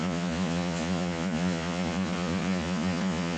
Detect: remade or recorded remade